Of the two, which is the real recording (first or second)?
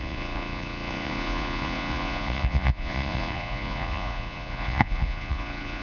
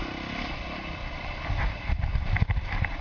second